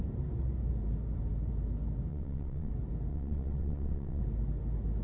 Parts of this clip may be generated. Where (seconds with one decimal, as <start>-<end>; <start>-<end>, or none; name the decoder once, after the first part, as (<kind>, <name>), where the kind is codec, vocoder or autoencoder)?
2.1-2.7 (vocoder, WaveNeXt); 3.1-4.2

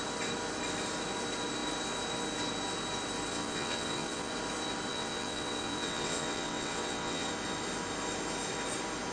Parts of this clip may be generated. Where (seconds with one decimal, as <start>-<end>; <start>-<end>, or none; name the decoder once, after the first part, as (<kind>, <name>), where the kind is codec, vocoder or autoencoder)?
3.3-4.3 (vocoder, WaveNeXt); 4.9-7.3